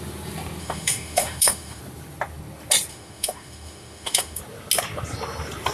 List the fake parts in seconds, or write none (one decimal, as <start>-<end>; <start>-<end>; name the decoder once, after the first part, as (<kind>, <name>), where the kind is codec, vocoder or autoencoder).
0.6-1.8 (autoencoder, DAC-VAE); 2.9-4.4